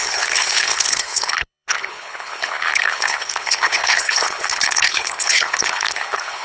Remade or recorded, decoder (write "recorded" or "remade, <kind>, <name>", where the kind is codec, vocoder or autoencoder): remade, codec, HILCodec